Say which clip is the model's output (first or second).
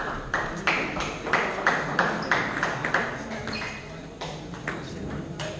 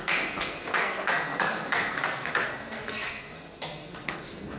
second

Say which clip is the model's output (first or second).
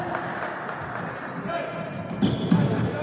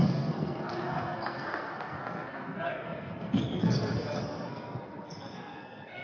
second